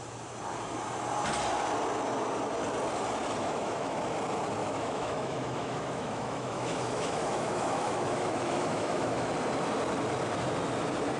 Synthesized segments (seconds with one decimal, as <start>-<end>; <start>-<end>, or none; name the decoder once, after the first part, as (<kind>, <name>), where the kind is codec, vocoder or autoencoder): 3.4-4.0 (autoencoder, DAC-VAE); 4.6-9.3